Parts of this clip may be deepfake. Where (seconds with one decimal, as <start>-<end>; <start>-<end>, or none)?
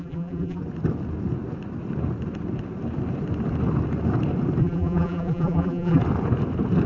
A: 0.0-0.6; 4.6-6.0